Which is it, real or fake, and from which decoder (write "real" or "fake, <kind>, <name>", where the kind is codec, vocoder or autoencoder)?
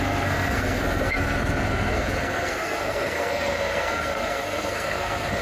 fake, codec, SNAC